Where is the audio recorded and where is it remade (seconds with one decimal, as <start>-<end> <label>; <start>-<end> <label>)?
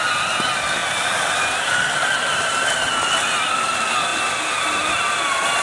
0.0-5.6 recorded